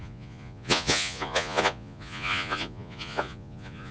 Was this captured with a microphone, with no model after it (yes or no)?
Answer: no